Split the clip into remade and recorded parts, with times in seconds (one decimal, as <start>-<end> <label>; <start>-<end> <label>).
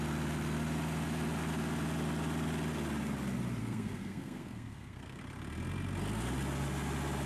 0.0-3.6 recorded; 3.6-5.2 remade; 5.2-7.3 recorded